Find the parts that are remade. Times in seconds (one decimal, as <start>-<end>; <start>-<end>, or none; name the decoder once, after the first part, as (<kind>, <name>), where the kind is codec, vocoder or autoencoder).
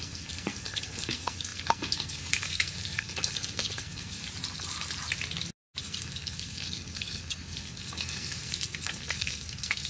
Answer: 0.0-4.2 (codec, SNAC); 5.8-9.9